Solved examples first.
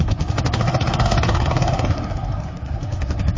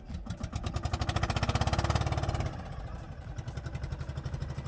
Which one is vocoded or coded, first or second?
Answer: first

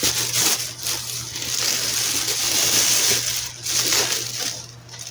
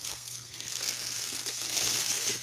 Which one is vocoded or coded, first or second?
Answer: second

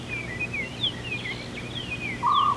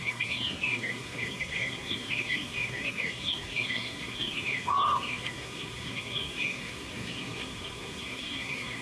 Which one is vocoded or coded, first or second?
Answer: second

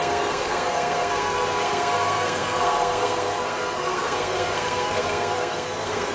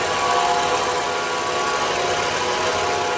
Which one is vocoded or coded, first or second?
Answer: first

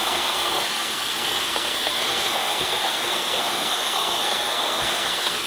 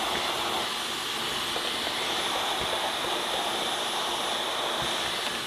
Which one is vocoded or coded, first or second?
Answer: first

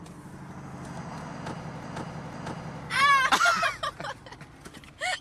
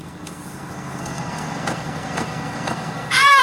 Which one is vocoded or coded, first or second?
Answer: second